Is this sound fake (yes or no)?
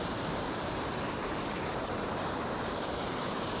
yes